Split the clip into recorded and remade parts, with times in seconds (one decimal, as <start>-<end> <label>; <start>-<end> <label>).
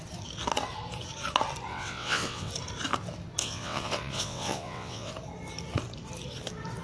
0.0-1.7 recorded; 1.7-2.5 remade; 2.5-3.4 recorded; 3.4-5.1 remade; 5.1-6.8 recorded